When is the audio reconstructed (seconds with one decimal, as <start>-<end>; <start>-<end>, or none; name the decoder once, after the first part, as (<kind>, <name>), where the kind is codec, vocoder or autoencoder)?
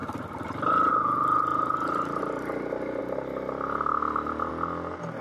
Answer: none